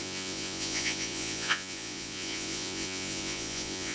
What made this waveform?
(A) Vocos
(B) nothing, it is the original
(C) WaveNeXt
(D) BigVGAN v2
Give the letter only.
A